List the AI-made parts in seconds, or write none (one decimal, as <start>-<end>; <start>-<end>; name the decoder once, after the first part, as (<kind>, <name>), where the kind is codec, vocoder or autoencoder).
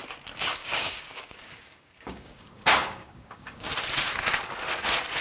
0.6-3.7 (codec, DAC)